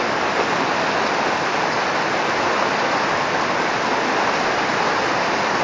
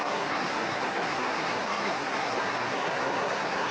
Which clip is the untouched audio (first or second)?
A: first